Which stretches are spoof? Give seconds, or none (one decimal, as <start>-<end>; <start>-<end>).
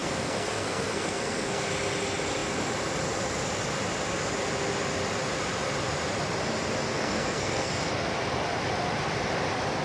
0.0-1.7; 6.9-7.7